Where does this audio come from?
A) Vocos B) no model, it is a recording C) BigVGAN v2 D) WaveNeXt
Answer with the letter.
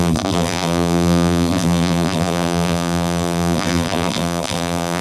C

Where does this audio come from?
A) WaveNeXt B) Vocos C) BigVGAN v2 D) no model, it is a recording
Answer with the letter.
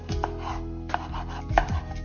D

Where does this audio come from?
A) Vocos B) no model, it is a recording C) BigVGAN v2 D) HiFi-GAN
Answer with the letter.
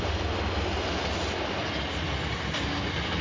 B